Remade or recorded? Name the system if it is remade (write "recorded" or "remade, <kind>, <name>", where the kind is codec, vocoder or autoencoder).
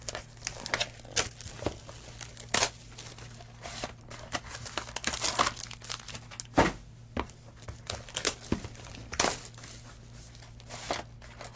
recorded